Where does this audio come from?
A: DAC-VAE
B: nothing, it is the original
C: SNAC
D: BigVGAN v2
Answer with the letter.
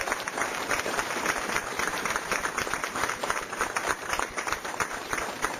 D